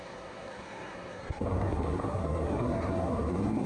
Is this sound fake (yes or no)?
yes